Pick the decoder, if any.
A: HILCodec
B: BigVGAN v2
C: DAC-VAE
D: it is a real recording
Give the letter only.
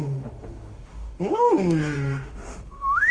C